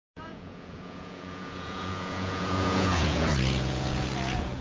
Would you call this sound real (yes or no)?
no